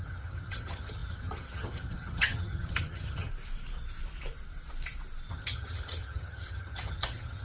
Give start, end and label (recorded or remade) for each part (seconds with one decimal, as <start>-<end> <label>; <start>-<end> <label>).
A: 0.0-3.3 remade; 3.3-5.3 recorded; 5.3-7.4 remade